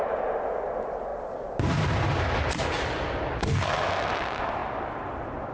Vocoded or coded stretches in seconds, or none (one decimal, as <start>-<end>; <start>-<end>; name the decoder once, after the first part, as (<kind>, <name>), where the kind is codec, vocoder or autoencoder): none

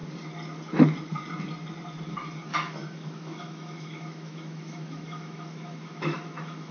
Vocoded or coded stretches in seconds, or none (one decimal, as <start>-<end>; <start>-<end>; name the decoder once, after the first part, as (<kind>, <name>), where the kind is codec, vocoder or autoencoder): 2.5-6.7 (autoencoder, DAC-VAE)

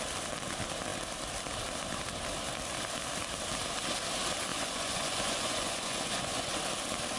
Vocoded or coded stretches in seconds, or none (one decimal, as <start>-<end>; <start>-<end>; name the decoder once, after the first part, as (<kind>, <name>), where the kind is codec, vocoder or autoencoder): 4.5-6.6 (vocoder, Vocos)

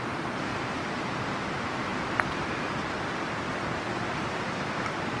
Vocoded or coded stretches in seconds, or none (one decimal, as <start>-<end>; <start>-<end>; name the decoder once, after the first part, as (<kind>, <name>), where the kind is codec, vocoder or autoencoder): 0.5-1.1 (vocoder, BigVGAN v2); 1.9-5.2

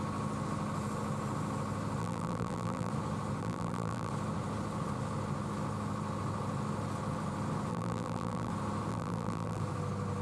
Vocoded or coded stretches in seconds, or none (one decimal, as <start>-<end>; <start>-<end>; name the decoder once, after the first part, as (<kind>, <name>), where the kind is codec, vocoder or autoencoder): 2.0-2.9 (vocoder, BigVGAN v2); 3.4-4.1; 7.7-8.5; 8.9-9.6